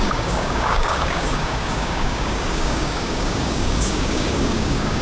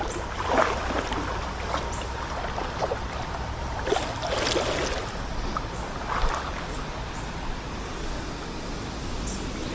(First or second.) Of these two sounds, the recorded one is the second